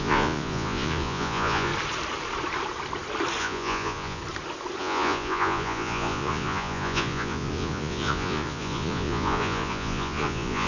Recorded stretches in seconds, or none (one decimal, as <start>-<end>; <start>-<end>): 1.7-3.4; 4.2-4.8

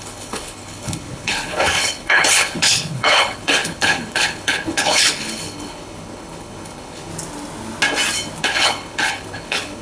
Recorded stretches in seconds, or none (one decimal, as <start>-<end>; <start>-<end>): 7.1-8.4

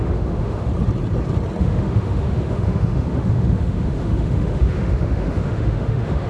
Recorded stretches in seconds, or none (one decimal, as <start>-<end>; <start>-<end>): 0.7-1.6

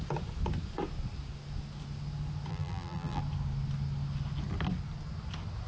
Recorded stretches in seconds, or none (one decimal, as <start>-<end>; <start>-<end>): 0.0-2.5; 3.2-5.7